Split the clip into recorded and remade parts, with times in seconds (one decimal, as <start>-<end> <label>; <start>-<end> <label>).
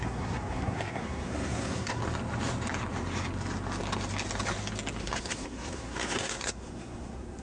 0.0-2.0 remade; 2.0-5.0 recorded; 5.0-7.4 remade